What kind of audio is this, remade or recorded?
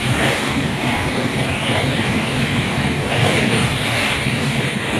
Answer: remade